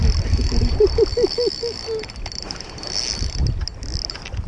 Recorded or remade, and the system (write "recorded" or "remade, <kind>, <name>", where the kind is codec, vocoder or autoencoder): recorded